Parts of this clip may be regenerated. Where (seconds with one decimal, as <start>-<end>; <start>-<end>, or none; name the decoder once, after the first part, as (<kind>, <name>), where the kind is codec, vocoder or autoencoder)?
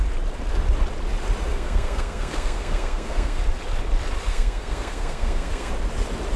1.5-3.4 (codec, SNAC); 4.3-5.7